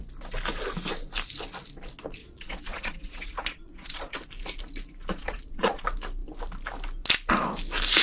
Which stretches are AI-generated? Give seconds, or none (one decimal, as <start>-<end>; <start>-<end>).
2.2-4.2; 5.0-5.8